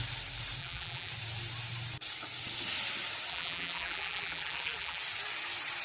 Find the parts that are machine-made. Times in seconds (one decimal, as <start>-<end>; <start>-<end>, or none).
0.6-1.1; 3.3-5.0